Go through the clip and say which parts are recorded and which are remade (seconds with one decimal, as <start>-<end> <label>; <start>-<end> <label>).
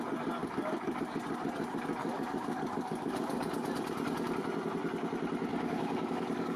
0.0-0.4 recorded; 0.4-1.0 remade; 1.0-2.0 recorded; 2.0-3.5 remade; 3.5-5.5 recorded; 5.5-6.6 remade